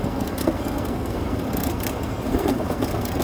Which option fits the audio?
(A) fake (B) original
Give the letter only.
A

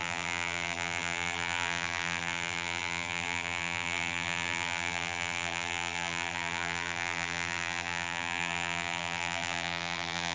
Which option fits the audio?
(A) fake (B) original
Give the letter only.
A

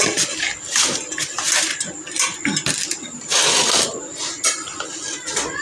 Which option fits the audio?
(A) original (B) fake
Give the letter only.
A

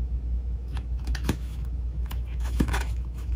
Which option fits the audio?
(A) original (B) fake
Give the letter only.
B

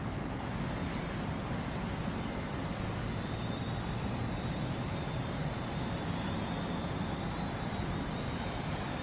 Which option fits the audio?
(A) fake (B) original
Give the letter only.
B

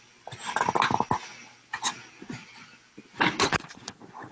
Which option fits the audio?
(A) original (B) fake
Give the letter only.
A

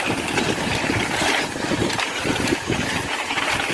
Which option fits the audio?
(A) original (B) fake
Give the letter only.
B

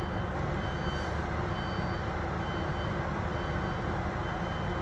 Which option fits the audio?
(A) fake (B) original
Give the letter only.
B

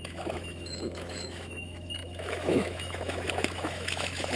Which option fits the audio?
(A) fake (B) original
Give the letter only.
A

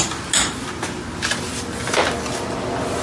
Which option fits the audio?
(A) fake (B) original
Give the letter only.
B